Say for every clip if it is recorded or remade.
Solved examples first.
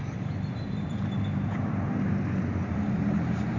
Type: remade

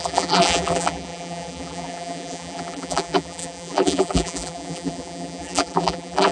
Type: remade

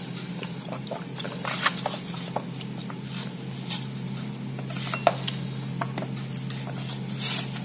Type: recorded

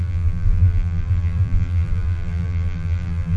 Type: remade